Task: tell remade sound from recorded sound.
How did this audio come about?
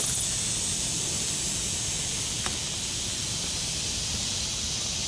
recorded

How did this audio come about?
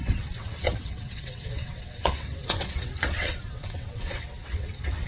remade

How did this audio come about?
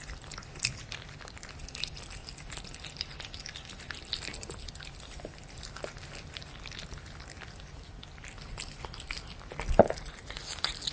recorded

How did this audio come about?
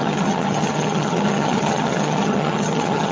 remade